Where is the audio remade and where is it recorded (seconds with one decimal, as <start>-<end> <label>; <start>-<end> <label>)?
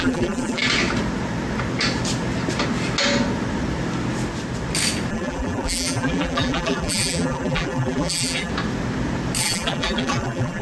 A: 0.0-0.6 remade; 0.6-5.1 recorded; 5.1-8.5 remade; 8.5-9.4 recorded; 9.4-10.6 remade